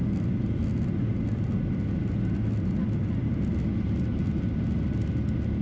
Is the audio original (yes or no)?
yes